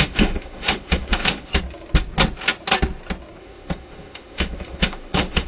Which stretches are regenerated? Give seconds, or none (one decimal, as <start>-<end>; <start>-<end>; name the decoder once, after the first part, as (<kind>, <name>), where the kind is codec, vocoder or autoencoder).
0.0-1.5 (autoencoder, DAC-VAE); 3.4-5.5